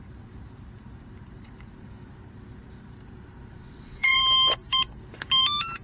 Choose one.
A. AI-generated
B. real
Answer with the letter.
A